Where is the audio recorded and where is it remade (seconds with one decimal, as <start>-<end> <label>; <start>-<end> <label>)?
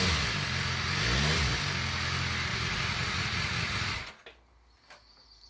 0.0-2.5 recorded; 2.5-4.1 remade; 4.1-5.5 recorded